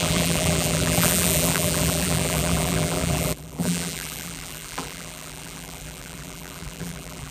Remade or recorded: remade